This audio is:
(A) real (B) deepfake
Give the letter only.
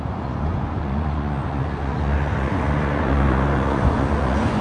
B